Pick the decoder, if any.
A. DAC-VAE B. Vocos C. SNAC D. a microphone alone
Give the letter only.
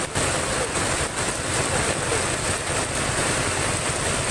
D